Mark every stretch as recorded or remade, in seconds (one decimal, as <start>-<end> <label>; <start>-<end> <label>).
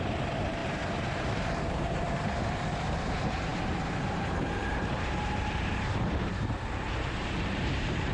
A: 0.0-8.1 remade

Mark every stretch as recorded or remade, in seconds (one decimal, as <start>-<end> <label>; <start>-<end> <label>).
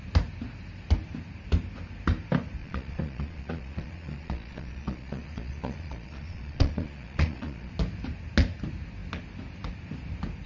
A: 0.0-2.6 recorded; 2.6-7.7 remade; 7.7-10.5 recorded